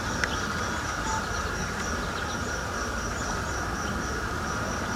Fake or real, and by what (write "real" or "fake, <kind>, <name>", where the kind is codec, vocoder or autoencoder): real